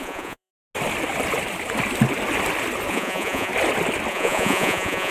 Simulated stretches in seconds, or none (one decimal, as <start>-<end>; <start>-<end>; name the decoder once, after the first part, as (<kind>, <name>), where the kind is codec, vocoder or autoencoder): 0.0-0.5 (vocoder, Vocos); 2.9-3.5; 4.1-5.1